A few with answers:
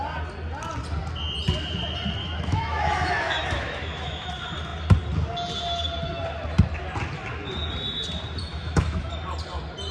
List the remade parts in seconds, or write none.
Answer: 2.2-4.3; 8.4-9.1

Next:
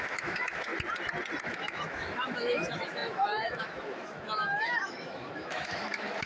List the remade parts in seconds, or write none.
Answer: 0.0-0.7; 1.4-6.3

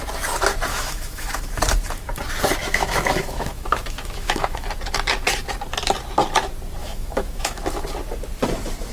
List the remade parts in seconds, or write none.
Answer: 0.7-1.4; 2.6-4.7; 6.8-7.6

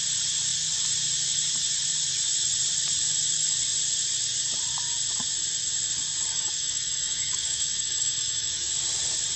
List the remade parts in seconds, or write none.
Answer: 6.3-8.7

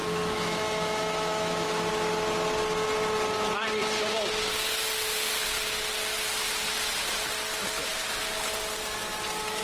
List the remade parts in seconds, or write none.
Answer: 0.0-1.9